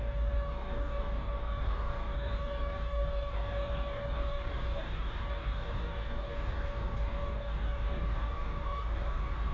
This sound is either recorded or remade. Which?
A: remade